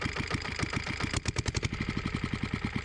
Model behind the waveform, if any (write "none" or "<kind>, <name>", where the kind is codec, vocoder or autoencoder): none